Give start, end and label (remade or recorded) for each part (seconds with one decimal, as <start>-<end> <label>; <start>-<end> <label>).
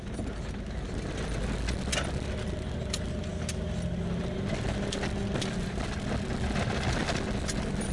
0.0-7.9 recorded